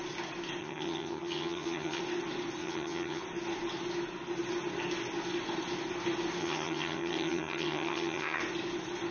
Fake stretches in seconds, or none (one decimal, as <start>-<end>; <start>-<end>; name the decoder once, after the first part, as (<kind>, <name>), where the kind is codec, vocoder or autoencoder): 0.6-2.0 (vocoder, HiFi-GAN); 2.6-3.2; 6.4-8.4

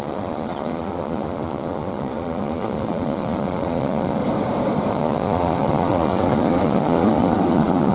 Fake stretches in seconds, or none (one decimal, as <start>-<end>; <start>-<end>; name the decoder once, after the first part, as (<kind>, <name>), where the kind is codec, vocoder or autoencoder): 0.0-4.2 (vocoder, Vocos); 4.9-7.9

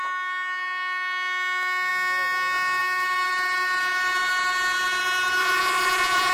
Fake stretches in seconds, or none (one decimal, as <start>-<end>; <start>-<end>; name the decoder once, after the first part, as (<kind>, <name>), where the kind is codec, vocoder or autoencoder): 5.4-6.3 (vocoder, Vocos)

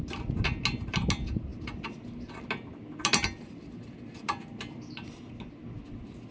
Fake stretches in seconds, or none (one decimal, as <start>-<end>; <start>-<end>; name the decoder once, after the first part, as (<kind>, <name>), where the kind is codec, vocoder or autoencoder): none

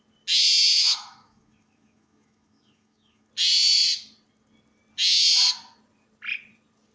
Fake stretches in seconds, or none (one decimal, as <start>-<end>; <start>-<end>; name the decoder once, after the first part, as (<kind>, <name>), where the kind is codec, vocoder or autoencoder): 0.7-3.3 (autoencoder, DAC-VAE)

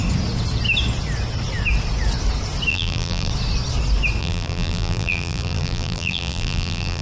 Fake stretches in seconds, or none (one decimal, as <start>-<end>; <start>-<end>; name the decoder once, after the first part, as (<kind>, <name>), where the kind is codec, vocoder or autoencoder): 2.7-3.3 (vocoder, BigVGAN v2); 4.2-7.0

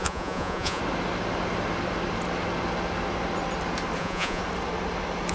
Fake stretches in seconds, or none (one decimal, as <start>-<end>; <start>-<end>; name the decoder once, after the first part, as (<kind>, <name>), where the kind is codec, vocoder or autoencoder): 0.0-0.8 (vocoder, Vocos); 4.0-4.4

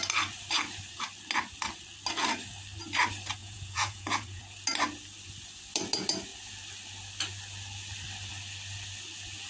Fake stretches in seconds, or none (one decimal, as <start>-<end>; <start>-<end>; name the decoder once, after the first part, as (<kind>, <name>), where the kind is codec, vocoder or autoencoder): 3.4-4.4 (vocoder, Vocos)